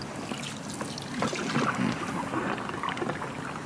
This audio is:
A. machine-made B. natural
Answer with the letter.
B